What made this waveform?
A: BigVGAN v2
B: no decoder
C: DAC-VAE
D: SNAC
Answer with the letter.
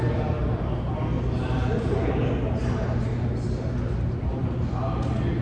B